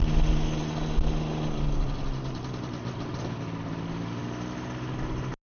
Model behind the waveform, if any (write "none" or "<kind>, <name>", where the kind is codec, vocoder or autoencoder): none